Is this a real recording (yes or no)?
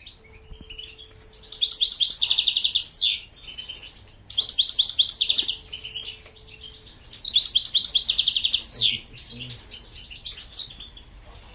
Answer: yes